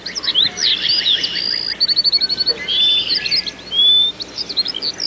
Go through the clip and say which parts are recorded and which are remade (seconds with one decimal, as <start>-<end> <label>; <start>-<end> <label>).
0.0-0.7 recorded; 0.7-3.3 remade; 3.3-3.8 recorded; 3.8-4.4 remade; 4.4-5.1 recorded

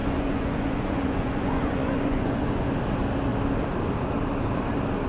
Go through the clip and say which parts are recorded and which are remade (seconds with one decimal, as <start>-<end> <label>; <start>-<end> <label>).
0.0-2.7 remade; 2.7-5.1 recorded

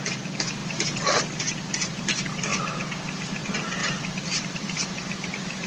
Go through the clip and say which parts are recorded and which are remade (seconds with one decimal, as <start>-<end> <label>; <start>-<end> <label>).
0.0-0.6 recorded; 0.6-1.2 remade; 1.2-3.8 recorded; 3.8-5.7 remade

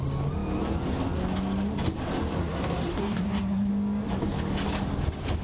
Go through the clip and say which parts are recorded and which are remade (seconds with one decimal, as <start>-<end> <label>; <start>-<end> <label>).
0.0-2.4 recorded; 2.4-3.7 remade; 3.7-5.4 recorded

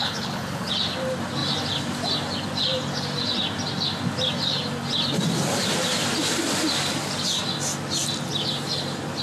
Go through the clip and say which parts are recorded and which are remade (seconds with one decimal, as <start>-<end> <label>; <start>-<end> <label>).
0.0-0.7 remade; 0.7-9.2 recorded

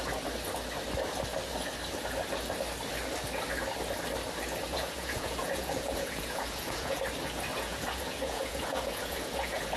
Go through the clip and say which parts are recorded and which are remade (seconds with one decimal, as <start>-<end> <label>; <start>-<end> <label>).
0.0-4.7 recorded; 4.7-7.0 remade; 7.0-7.5 recorded; 7.5-9.8 remade